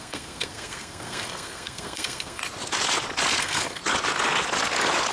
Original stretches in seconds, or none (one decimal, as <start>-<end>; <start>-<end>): 2.4-3.4; 3.8-5.1